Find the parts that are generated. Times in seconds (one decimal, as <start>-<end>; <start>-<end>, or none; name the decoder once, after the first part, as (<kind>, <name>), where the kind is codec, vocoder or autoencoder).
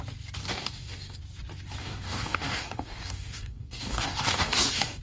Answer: 0.4-1.2 (codec, DAC); 1.8-5.0